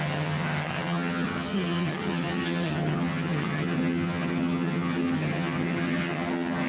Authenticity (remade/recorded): remade